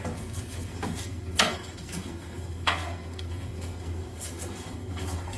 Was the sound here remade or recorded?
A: remade